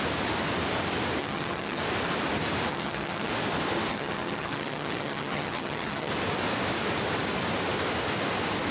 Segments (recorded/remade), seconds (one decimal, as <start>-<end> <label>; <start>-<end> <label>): 0.0-1.2 recorded; 1.2-1.8 remade; 1.8-2.7 recorded; 2.7-3.3 remade; 3.3-3.9 recorded; 3.9-6.1 remade; 6.1-8.7 recorded